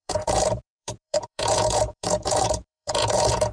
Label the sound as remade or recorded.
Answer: remade